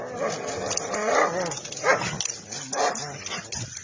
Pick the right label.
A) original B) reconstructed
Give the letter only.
A